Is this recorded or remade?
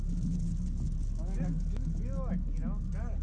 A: recorded